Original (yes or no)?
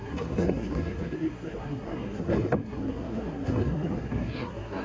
no